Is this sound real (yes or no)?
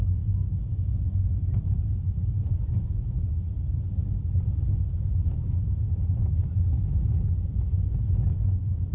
yes